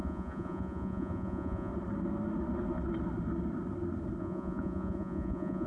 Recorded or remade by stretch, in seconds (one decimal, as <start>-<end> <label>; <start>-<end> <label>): 0.0-1.7 remade; 1.7-4.2 recorded; 4.2-5.7 remade